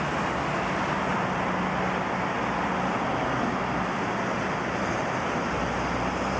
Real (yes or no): yes